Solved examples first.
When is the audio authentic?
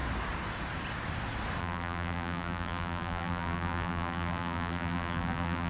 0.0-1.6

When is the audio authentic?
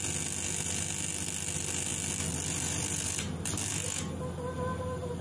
0.0-5.2